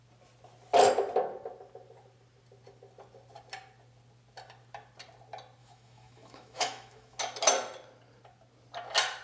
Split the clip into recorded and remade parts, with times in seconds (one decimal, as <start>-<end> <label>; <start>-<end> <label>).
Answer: 0.0-5.6 recorded; 5.6-7.2 remade; 7.2-9.2 recorded